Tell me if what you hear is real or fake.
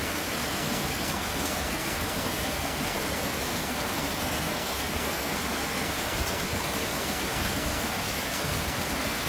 fake